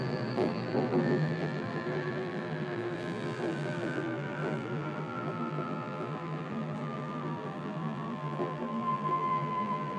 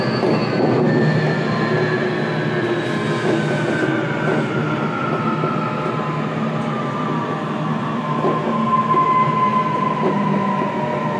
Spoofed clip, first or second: first